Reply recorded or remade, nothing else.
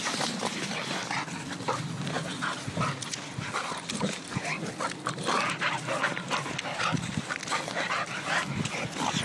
recorded